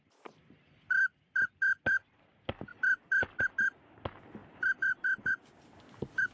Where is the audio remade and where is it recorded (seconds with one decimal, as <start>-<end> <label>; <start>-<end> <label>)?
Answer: 0.0-2.7 recorded; 2.7-3.4 remade; 3.4-4.4 recorded; 4.4-5.3 remade; 5.3-6.3 recorded

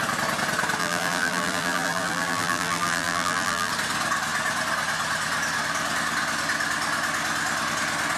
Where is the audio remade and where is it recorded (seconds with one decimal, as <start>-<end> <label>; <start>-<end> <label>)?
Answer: 0.0-0.8 recorded; 0.8-3.7 remade; 3.7-8.2 recorded

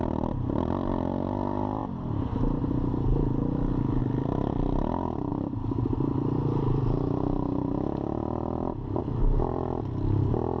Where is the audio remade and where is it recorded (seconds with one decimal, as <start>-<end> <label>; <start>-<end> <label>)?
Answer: 0.0-10.6 recorded

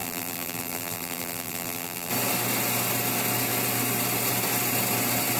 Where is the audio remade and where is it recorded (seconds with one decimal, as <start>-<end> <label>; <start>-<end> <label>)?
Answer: 0.0-2.1 remade; 2.1-5.4 recorded

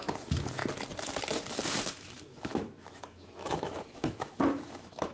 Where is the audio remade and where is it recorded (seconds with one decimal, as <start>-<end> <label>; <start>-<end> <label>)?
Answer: 0.0-0.6 remade; 0.6-1.5 recorded; 1.5-5.1 remade

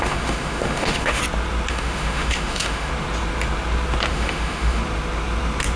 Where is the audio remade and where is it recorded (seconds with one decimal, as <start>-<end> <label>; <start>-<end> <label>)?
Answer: 0.0-1.2 remade; 1.2-1.7 recorded; 1.7-2.9 remade; 2.9-4.1 recorded; 4.1-4.8 remade; 4.8-5.8 recorded